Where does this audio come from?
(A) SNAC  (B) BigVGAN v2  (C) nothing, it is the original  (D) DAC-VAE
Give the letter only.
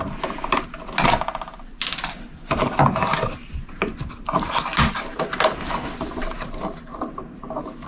C